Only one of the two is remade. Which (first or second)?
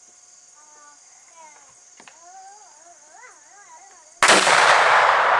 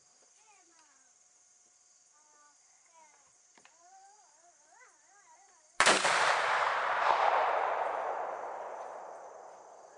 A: second